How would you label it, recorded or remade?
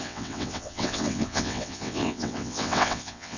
remade